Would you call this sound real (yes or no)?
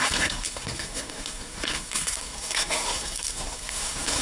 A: no